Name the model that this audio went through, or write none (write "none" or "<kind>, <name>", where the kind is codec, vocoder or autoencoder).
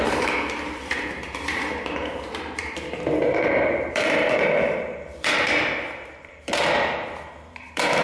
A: vocoder, BigVGAN v2